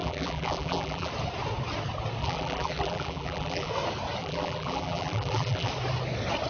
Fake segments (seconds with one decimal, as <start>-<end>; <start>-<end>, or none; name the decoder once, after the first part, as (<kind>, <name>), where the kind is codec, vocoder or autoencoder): 0.0-1.1 (vocoder, BigVGAN v2); 2.2-3.7; 4.2-5.7